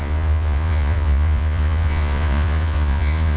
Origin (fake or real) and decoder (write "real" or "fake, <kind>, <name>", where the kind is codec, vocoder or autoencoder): fake, vocoder, Vocos